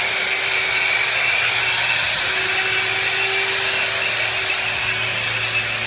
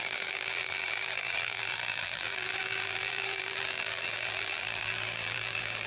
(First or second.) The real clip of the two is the first